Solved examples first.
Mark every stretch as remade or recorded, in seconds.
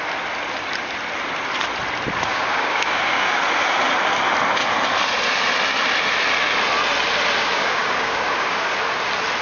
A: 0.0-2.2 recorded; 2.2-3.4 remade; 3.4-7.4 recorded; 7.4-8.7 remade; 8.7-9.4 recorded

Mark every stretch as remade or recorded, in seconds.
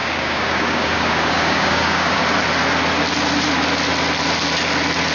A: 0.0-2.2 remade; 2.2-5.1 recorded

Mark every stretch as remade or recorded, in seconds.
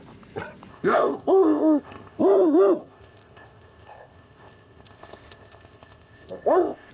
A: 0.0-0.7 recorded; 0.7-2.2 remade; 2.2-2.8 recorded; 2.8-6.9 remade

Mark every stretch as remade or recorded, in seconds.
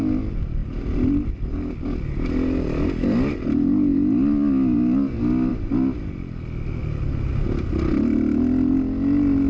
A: 0.0-9.5 recorded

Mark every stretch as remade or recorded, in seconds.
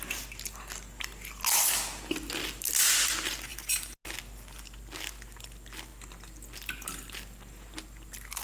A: 0.0-8.4 recorded